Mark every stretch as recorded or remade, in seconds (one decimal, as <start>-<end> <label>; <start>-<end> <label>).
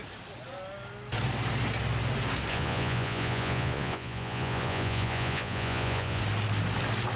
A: 0.0-2.5 recorded; 2.5-6.2 remade; 6.2-7.2 recorded